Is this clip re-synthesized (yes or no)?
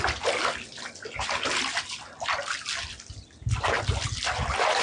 no